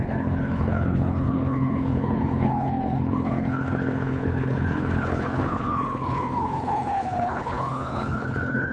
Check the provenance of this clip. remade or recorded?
remade